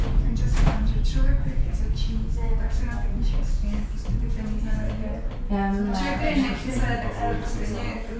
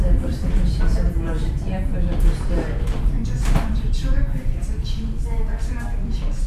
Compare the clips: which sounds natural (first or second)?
first